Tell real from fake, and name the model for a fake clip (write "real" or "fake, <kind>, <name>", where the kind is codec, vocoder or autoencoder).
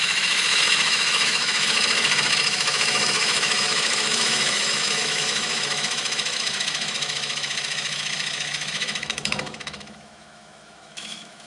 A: fake, autoencoder, DAC-VAE